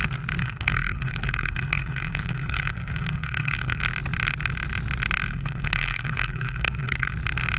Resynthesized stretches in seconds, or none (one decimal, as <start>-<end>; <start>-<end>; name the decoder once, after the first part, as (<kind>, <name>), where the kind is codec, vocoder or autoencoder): 0.4-3.8 (codec, SNAC); 5.3-7.1